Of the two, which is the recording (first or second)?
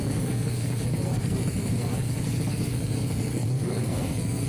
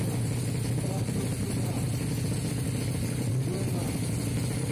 second